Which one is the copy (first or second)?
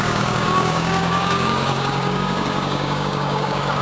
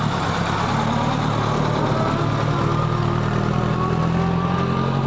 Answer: first